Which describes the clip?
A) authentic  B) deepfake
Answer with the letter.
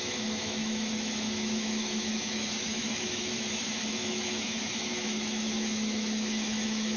B